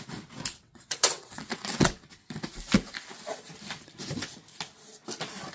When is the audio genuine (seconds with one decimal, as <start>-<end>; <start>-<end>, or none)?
0.0-0.5; 2.0-5.5